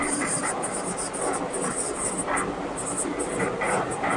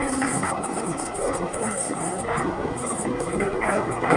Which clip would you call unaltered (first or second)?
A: first